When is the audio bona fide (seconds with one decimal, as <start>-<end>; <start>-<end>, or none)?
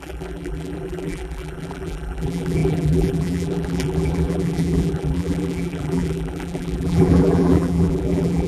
none